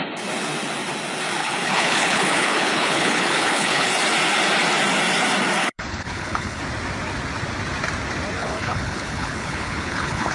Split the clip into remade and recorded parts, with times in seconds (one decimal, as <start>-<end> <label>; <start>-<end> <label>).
0.0-1.4 recorded; 1.4-3.9 remade; 3.9-5.6 recorded; 5.6-6.6 remade; 6.6-8.4 recorded; 8.4-10.3 remade